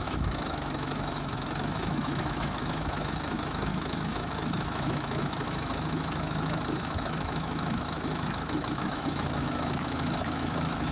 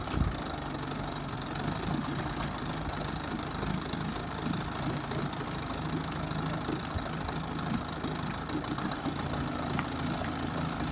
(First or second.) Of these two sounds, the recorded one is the second